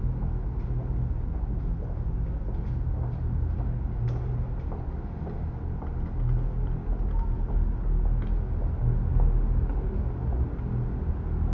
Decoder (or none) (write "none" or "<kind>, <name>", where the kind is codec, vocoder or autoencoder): none